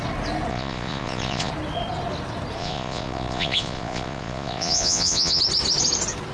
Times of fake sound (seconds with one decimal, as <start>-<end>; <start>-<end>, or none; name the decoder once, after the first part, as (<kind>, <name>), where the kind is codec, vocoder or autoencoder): 0.5-1.5 (vocoder, Vocos); 2.6-5.4